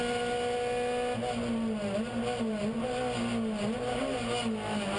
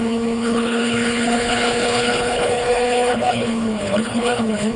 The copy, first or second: second